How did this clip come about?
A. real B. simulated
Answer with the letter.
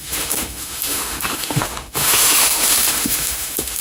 B